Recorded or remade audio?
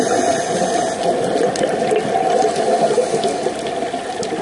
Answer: recorded